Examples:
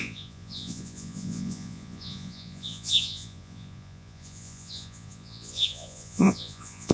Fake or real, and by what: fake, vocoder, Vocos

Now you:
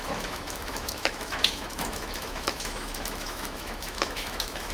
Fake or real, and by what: fake, autoencoder, DAC-VAE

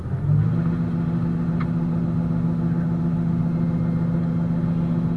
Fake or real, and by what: real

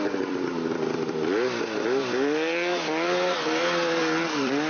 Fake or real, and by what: fake, vocoder, BigVGAN v2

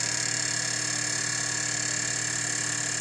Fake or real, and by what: real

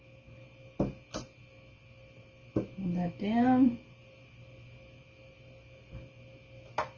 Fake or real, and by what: real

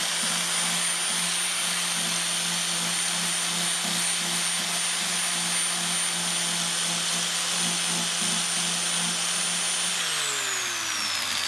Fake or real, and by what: real